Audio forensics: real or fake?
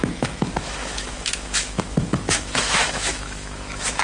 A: fake